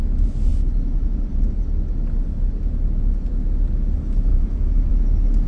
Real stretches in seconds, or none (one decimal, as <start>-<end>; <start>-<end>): 0.0-4.3; 4.9-5.5